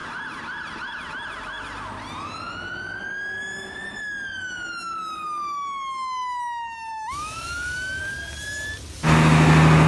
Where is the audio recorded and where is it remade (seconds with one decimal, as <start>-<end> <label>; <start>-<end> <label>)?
0.0-6.9 recorded; 6.9-8.0 remade; 8.0-9.9 recorded